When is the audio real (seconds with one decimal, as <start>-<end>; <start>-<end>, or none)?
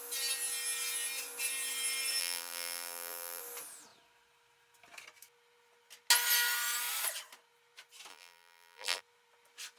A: 0.0-2.2; 3.4-8.1; 9.0-9.8